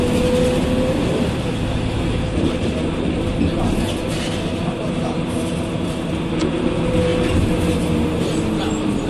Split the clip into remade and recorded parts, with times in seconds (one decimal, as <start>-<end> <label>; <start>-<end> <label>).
0.0-9.1 recorded